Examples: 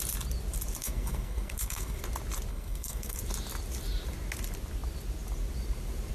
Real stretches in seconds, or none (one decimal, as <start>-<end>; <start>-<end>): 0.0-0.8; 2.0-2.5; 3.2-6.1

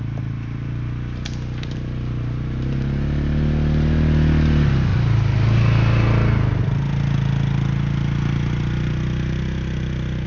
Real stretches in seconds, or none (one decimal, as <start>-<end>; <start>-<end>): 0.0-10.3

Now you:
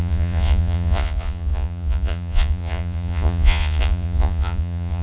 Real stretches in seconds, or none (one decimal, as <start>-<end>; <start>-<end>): none

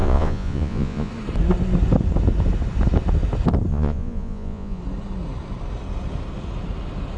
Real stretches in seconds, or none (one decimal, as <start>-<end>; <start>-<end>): 1.1-3.7; 4.8-7.2